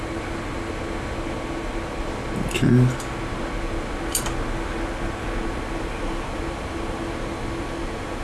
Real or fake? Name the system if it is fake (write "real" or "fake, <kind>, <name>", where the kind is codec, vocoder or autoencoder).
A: real